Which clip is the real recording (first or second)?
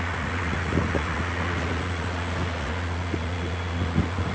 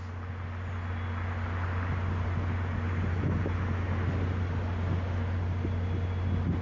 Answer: second